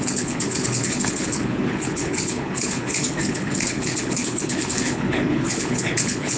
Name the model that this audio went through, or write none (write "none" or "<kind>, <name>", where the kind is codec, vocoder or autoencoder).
codec, HILCodec